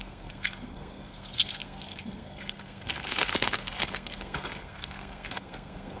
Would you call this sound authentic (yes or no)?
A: no